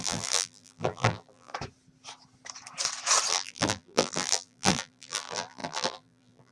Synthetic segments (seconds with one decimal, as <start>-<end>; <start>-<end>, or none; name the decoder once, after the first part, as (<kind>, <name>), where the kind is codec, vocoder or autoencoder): 0.0-1.5 (vocoder, BigVGAN v2); 3.3-6.5